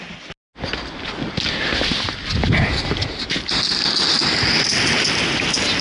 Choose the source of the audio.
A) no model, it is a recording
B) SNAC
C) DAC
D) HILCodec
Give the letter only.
A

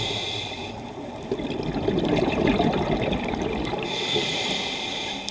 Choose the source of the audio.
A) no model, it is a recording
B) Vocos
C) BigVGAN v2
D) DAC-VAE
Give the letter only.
A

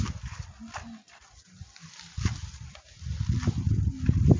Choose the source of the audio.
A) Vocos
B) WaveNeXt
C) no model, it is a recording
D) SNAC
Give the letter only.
C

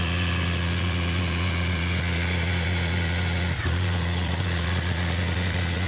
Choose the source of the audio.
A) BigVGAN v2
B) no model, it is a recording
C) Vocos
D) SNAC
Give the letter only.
C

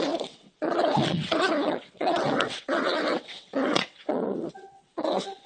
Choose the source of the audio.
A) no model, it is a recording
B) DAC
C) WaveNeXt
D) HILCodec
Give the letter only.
C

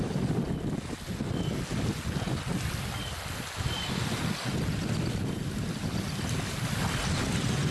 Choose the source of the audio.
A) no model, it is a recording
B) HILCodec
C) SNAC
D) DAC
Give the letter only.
A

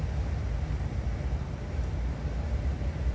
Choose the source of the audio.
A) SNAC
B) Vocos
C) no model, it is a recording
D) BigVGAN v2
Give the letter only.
C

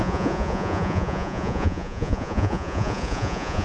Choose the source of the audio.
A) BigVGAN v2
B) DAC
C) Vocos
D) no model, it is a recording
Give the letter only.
C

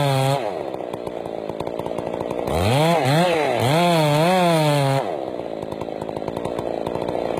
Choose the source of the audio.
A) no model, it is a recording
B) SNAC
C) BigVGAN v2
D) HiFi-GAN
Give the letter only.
A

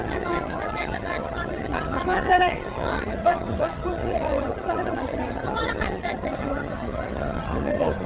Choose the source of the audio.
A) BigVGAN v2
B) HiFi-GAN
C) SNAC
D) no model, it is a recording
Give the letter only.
B